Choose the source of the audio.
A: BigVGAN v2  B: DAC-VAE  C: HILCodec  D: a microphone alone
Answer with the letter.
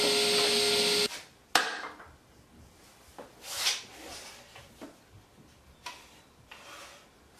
D